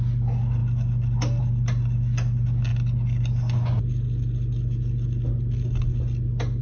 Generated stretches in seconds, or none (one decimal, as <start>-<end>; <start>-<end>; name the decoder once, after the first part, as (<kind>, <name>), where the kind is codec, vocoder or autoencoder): none